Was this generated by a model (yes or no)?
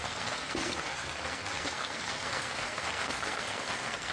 yes